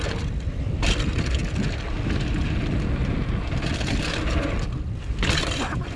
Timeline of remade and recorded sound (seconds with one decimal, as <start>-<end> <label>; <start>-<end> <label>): 0.0-6.0 recorded